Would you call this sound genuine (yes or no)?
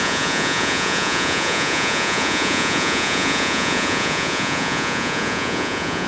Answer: no